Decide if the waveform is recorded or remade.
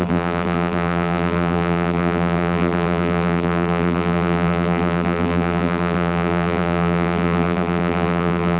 remade